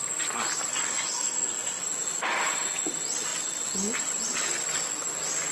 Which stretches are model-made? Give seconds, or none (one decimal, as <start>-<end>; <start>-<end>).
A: 0.7-1.8